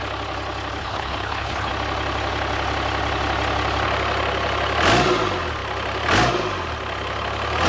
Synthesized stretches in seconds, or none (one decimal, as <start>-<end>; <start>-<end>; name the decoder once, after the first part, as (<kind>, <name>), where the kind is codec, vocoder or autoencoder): 0.8-1.7 (codec, HILCodec)

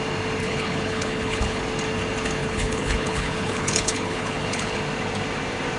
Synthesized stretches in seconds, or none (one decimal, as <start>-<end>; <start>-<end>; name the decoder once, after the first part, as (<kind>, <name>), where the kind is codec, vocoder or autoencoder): 0.4-1.6 (codec, HILCodec); 2.4-4.8